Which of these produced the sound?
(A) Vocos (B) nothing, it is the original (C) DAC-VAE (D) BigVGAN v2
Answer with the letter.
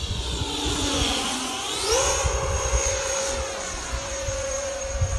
A